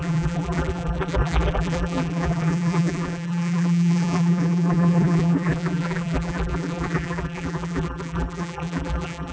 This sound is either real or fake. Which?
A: fake